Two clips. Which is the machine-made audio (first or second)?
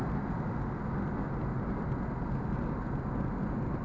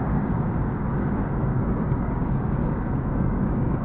second